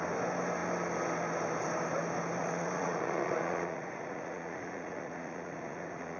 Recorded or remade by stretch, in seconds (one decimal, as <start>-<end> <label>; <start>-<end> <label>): 0.0-2.4 recorded; 2.4-6.2 remade